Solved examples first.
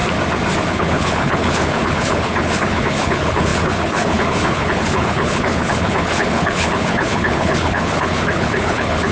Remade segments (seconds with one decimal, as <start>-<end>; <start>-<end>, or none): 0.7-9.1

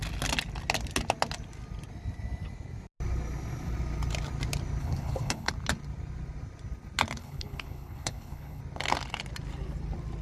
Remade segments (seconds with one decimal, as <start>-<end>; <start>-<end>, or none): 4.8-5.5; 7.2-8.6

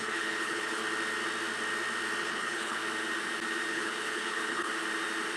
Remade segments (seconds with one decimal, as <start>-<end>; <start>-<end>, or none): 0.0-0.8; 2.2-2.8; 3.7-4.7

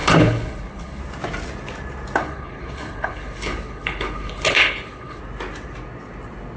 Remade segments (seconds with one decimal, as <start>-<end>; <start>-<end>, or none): 0.0-1.0; 2.2-5.2

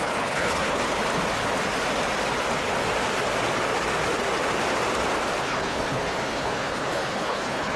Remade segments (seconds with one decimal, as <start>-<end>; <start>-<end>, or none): 0.0-1.0; 5.4-7.8